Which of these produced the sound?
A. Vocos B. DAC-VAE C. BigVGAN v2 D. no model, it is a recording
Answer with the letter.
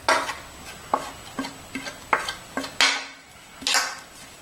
D